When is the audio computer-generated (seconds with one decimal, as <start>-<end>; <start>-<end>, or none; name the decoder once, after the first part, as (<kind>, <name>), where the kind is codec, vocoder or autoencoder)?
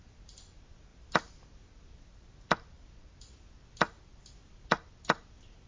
none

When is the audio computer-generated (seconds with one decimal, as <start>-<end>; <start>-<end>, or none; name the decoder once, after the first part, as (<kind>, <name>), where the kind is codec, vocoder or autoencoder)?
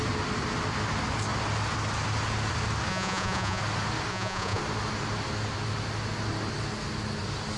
2.9-3.6 (vocoder, Vocos); 4.1-4.6